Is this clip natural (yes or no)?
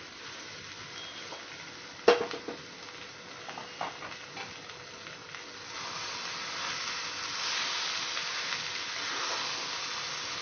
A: yes